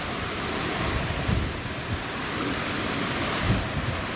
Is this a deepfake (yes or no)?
no